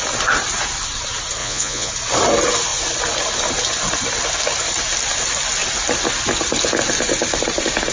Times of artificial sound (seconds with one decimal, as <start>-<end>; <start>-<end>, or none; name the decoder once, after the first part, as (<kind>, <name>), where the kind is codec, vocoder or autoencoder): 1.4-1.9 (vocoder, Vocos)